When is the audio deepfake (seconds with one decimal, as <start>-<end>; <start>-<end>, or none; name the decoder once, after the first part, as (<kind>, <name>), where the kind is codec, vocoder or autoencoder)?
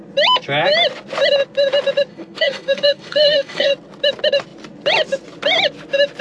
2.1-3.7 (codec, SNAC)